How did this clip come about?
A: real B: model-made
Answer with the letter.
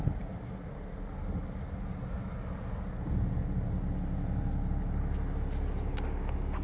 A